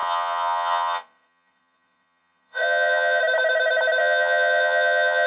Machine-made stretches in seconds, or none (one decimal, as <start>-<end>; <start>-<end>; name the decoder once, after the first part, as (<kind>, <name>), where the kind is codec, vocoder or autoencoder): 0.0-3.2 (vocoder, Vocos); 4.0-5.3